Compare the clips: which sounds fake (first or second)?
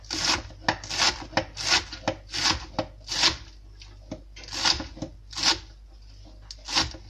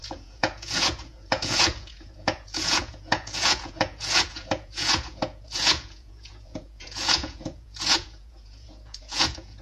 second